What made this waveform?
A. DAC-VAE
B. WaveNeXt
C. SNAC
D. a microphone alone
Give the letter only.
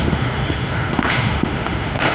A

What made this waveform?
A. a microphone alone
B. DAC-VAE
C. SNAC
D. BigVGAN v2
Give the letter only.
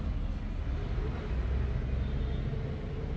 A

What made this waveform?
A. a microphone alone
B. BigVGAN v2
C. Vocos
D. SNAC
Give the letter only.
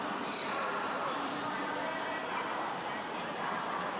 A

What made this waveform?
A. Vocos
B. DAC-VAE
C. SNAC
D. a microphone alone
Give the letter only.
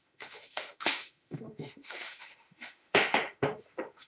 B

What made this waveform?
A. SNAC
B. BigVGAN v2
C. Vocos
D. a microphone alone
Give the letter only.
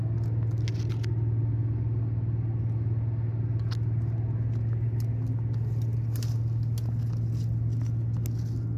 D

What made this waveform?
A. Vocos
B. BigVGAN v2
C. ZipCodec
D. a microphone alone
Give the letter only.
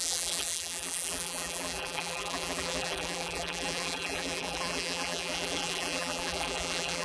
B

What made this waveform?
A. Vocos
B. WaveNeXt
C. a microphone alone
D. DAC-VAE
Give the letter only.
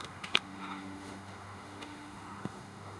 D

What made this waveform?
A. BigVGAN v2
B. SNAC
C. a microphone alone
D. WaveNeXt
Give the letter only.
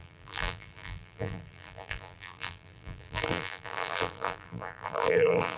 A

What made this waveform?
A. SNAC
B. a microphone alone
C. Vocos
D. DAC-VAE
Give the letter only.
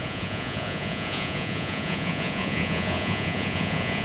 C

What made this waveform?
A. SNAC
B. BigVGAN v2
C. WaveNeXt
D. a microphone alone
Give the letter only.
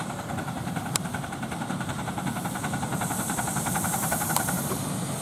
B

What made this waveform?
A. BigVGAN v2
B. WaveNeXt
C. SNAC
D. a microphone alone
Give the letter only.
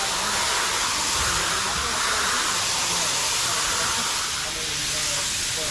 D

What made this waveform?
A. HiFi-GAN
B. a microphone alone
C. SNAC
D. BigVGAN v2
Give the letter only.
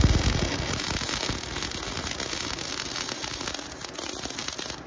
B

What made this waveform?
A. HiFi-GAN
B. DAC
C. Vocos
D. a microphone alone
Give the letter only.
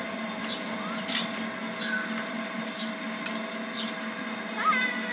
D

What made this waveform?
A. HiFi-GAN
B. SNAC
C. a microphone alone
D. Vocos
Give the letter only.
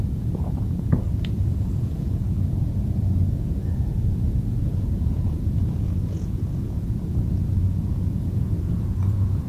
D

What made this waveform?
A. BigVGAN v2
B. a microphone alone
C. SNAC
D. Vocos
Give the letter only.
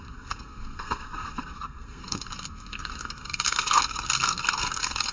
C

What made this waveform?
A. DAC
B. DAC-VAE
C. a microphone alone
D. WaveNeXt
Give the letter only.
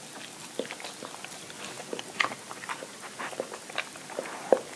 C